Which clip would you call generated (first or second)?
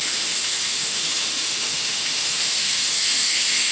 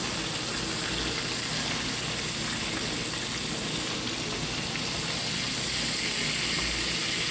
first